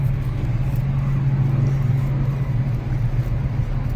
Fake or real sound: real